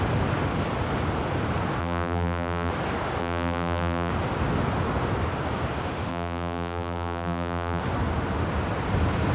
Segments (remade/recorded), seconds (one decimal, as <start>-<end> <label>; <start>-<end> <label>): 0.0-1.8 recorded; 1.8-2.7 remade; 2.7-3.2 recorded; 3.2-4.1 remade; 4.1-6.1 recorded; 6.1-7.8 remade; 7.8-9.3 recorded